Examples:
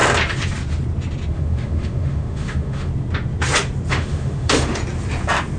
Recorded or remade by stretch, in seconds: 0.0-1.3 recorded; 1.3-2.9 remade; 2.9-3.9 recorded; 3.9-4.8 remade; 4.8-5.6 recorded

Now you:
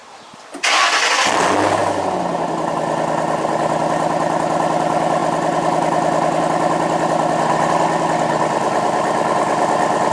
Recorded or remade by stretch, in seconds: 0.0-0.8 remade; 0.8-10.1 recorded

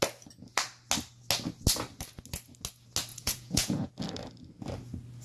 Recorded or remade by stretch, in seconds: 0.0-3.1 recorded; 3.1-3.9 remade; 3.9-5.2 recorded

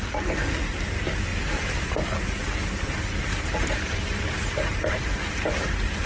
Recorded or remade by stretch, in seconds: 0.0-6.1 recorded